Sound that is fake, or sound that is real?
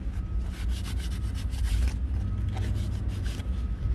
real